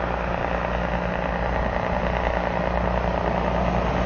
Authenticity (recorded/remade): recorded